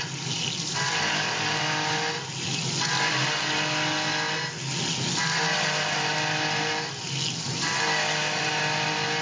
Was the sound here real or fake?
real